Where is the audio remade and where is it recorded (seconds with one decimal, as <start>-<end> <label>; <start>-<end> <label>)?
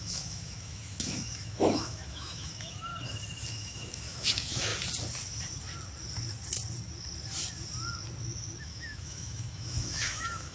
0.0-2.9 remade; 2.9-3.5 recorded; 3.5-4.7 remade; 4.7-8.6 recorded; 8.6-10.5 remade